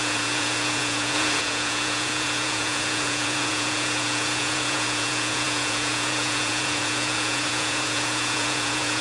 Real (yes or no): no